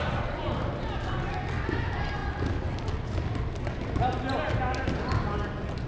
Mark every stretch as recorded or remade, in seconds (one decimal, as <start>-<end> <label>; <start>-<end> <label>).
0.0-5.9 recorded